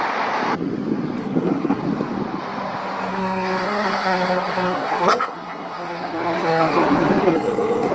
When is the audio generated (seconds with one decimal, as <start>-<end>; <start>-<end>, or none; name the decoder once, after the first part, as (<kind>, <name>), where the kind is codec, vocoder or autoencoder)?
1.2-1.8 (codec, SNAC); 3.1-7.9